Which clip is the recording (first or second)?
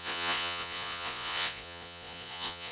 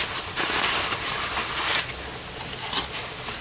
second